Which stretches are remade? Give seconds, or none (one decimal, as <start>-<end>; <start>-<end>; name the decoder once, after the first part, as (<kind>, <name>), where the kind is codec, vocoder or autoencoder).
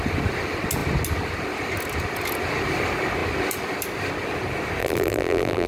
4.8-5.7 (vocoder, BigVGAN v2)